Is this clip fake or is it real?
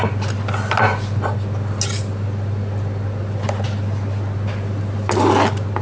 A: real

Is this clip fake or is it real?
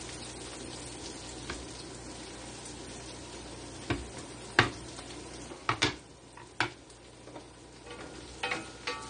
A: real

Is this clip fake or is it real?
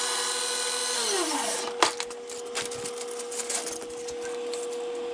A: real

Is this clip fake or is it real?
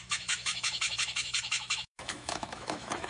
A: fake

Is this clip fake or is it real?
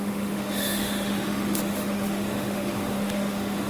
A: fake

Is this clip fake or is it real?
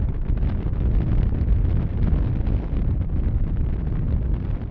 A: real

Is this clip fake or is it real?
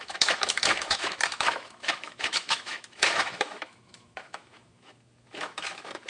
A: fake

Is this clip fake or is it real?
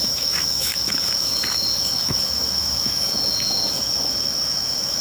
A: fake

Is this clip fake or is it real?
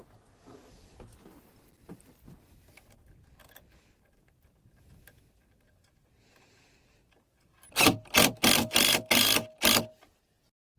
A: real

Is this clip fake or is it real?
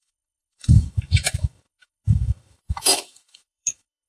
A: fake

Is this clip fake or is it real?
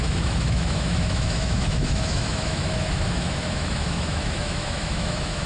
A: fake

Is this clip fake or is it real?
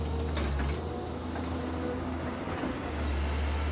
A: real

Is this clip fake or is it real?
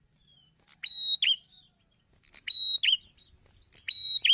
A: real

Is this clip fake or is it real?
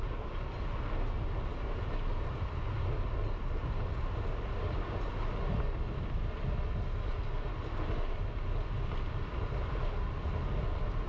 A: real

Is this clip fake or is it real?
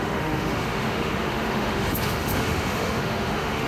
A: fake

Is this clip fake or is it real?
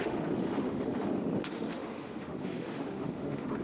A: fake